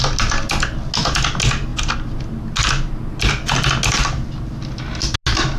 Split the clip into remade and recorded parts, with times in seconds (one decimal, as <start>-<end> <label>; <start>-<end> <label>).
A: 0.0-5.6 recorded